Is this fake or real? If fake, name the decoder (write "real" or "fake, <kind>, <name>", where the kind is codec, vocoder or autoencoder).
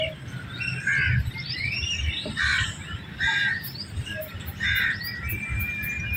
fake, vocoder, BigVGAN v2